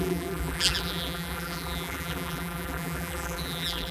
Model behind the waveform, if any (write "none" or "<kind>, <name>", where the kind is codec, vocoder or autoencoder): vocoder, BigVGAN v2